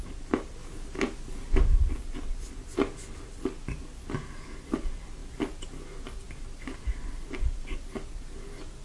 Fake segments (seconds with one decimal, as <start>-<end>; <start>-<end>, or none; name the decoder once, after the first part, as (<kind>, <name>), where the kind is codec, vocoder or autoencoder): none